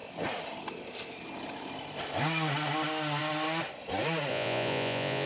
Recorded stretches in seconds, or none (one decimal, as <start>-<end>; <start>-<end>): 0.0-4.3